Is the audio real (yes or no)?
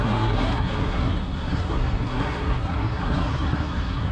no